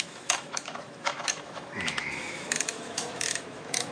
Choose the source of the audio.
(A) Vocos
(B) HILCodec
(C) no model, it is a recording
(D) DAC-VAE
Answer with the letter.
D